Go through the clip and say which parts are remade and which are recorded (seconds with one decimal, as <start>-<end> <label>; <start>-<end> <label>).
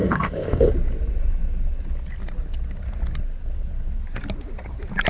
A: 0.0-0.7 remade; 0.7-5.1 recorded